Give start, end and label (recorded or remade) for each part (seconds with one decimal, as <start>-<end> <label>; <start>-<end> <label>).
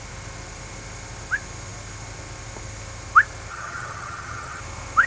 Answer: 0.0-3.5 recorded; 3.5-4.6 remade; 4.6-5.1 recorded